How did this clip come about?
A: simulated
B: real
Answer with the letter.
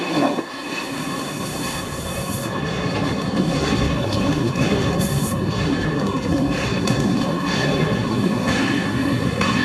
A